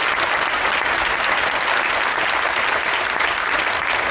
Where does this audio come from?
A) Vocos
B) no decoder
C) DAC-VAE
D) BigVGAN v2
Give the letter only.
B